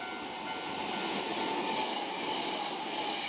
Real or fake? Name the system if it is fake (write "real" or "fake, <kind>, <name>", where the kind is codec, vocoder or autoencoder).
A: real